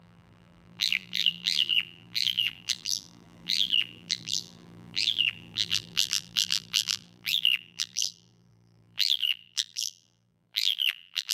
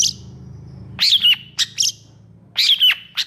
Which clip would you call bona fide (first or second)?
second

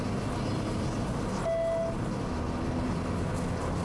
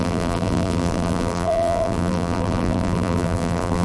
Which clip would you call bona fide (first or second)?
first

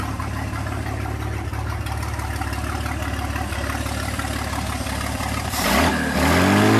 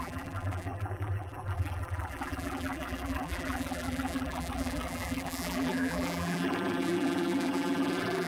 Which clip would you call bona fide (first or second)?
first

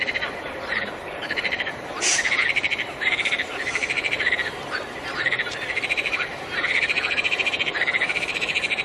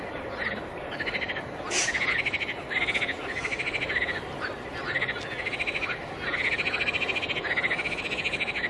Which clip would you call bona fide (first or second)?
second